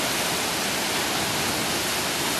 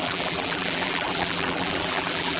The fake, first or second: second